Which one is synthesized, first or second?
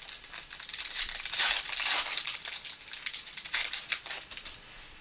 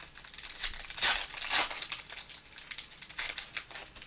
first